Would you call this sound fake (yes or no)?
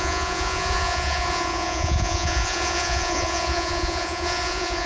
yes